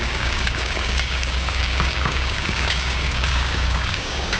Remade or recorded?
remade